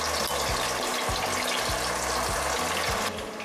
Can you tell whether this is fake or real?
real